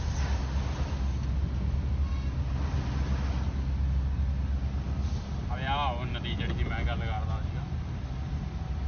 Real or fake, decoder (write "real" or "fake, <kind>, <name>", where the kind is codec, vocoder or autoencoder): real